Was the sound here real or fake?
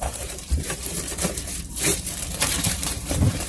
fake